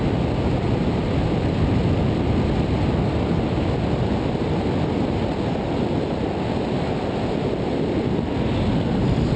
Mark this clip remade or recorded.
recorded